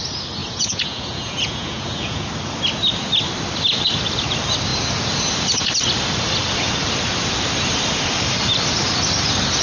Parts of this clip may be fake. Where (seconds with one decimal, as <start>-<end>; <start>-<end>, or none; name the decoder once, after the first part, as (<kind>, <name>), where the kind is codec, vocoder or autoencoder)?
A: 0.4-2.3 (vocoder, Vocos)